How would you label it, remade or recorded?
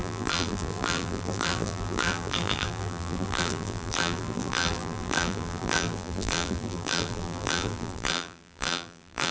remade